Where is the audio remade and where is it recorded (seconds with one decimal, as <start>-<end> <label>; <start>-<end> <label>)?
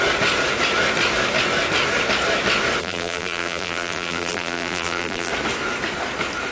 0.0-2.8 recorded; 2.8-5.3 remade; 5.3-6.5 recorded